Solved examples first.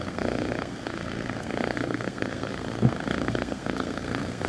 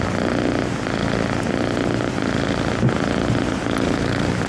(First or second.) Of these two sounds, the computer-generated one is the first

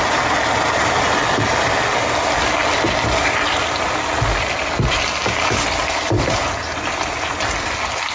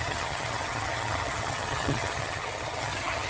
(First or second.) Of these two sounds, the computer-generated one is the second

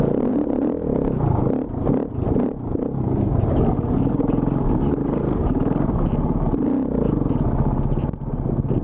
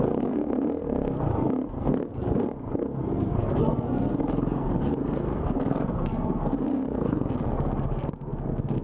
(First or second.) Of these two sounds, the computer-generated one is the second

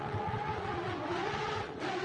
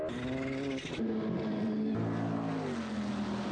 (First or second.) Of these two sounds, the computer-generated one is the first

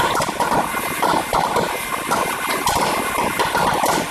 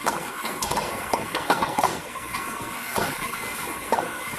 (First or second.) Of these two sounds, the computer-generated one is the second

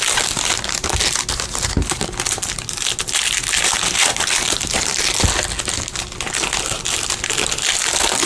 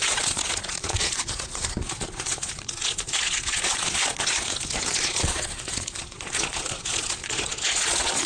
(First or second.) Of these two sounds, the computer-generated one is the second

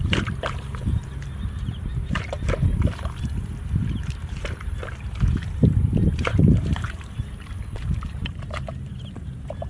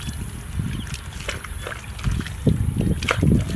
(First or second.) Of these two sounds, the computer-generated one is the first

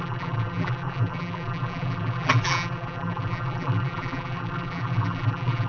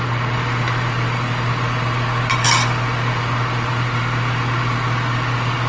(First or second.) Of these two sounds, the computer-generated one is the first